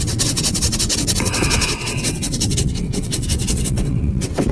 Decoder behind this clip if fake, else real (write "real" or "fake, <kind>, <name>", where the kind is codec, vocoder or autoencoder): fake, vocoder, WaveNeXt